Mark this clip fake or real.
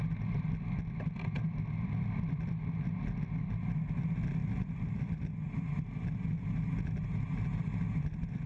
real